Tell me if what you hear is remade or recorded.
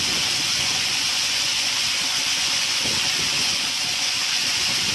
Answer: remade